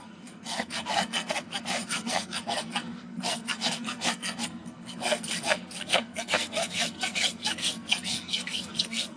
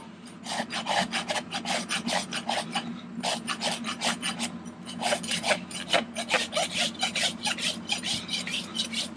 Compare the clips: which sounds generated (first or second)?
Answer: first